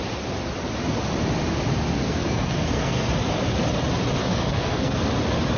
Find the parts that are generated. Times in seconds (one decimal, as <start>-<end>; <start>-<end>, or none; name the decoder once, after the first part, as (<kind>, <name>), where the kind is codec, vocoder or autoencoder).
2.0-3.1 (codec, SNAC); 4.2-5.1